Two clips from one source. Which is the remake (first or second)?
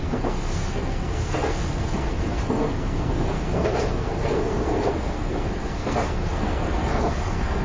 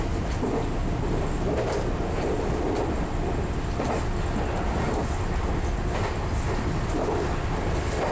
first